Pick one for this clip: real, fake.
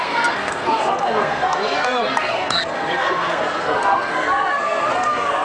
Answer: fake